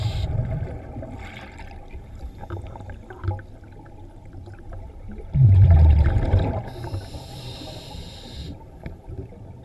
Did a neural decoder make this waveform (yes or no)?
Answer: no